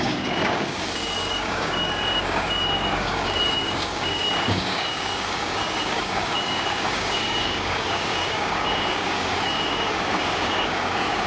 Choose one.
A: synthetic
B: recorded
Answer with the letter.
A